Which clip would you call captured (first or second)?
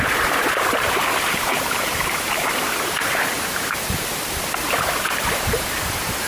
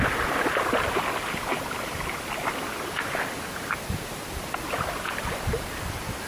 second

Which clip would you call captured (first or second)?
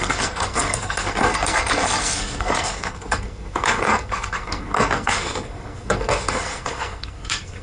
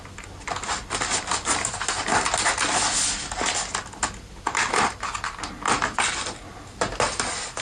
second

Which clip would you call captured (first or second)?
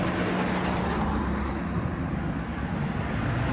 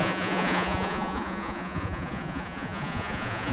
first